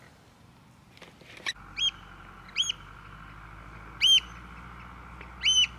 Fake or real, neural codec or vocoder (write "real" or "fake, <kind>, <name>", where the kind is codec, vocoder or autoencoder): real